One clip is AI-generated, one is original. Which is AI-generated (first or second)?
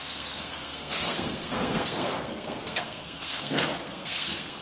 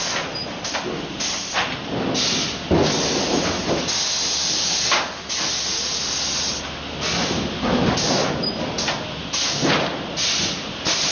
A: first